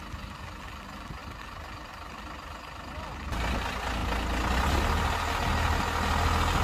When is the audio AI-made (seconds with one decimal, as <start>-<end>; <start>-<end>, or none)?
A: none